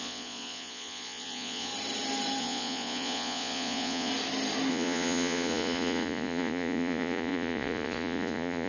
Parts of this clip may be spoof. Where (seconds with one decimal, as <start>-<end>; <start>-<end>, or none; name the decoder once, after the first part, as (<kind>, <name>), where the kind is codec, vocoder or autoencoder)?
0.0-1.7 (vocoder, Vocos); 2.4-4.1; 4.7-8.7